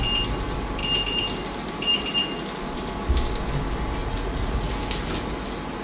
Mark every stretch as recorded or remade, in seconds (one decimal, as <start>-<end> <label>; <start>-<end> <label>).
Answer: 0.0-4.0 recorded; 4.0-4.7 remade; 4.7-5.8 recorded